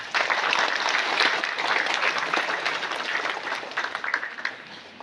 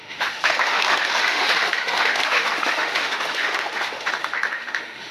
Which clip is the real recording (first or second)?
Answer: first